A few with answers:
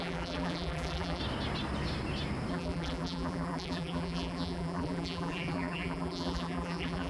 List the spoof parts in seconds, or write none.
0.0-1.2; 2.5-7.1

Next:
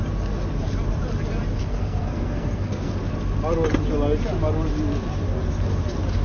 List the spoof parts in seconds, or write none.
1.6-2.9

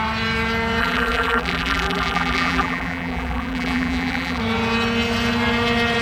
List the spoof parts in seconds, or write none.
0.8-4.4

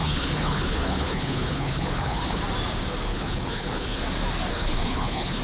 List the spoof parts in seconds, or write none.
0.0-2.4; 3.1-4.0; 4.5-5.4